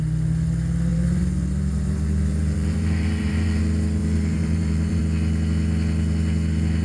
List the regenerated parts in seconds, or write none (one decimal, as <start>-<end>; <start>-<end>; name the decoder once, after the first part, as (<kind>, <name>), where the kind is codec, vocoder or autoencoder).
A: 0.9-3.6 (vocoder, BigVGAN v2); 4.0-5.0